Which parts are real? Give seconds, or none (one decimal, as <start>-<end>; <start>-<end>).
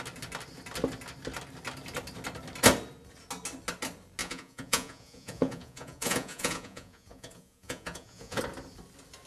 0.0-4.2; 8.4-9.3